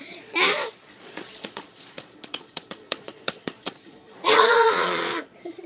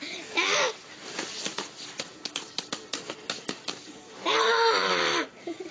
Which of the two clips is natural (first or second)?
second